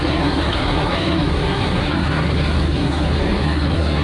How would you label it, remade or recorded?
remade